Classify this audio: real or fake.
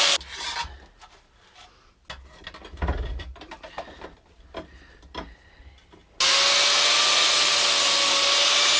real